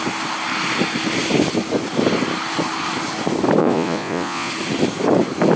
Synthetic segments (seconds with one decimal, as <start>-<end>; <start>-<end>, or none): 3.6-4.5